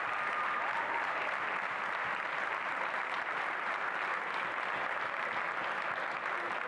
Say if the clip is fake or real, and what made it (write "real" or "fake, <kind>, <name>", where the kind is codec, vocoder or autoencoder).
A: real